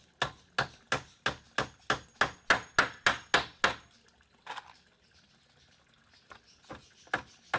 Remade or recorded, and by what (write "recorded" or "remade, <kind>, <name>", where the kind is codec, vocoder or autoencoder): recorded